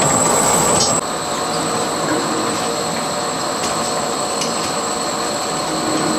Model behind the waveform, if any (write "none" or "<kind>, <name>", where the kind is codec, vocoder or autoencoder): none